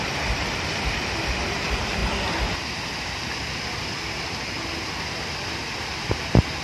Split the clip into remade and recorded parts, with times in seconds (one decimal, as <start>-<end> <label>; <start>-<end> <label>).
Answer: 0.0-6.6 recorded